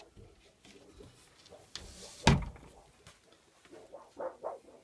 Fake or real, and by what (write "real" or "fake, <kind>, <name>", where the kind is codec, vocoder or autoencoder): real